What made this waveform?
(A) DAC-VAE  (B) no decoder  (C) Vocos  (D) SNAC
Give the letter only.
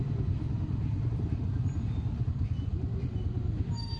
B